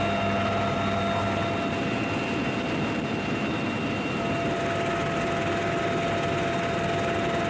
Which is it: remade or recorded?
recorded